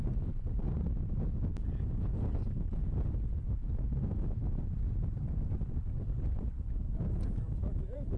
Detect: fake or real real